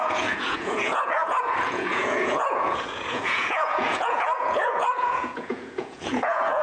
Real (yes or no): no